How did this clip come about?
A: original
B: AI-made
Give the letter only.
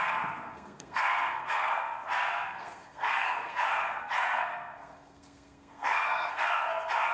B